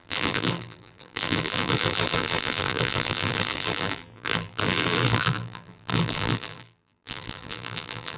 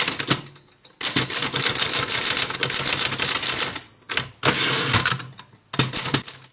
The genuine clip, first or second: second